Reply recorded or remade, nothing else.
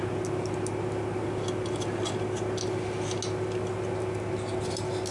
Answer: recorded